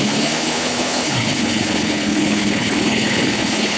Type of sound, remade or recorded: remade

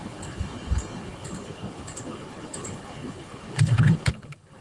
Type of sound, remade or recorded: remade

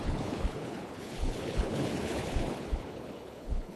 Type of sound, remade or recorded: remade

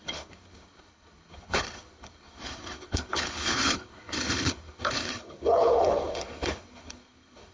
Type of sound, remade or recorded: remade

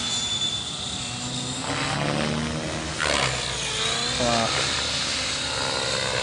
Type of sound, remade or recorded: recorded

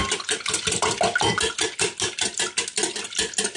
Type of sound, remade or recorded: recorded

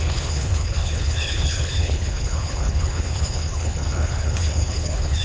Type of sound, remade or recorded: remade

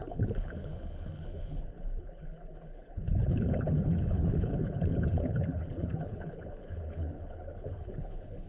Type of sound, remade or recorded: remade